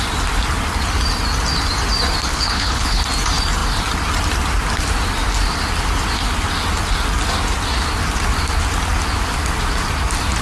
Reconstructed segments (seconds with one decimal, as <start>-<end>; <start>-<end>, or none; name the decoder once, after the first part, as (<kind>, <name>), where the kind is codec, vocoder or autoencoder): 2.3-3.0 (codec, HILCodec)